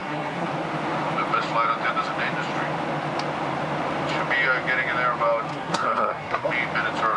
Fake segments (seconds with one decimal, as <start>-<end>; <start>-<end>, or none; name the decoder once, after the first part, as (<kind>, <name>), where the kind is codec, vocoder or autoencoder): 0.0-0.5 (codec, SNAC); 5.5-6.5